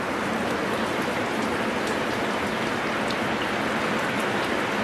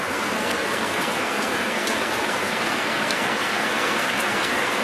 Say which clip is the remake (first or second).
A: second